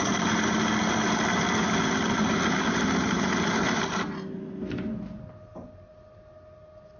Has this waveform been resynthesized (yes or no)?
no